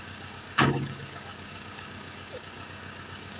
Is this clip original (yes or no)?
no